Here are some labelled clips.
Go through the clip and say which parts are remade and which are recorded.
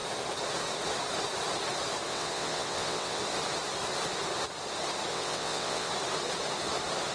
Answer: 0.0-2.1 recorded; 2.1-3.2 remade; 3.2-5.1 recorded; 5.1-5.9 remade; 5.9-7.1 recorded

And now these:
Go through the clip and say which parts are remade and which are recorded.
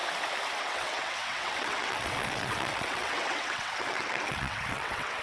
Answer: 0.0-0.6 recorded; 0.6-5.2 remade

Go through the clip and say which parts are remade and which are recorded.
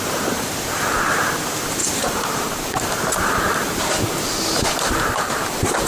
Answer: 0.0-5.9 remade